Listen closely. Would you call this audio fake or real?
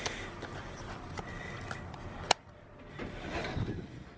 real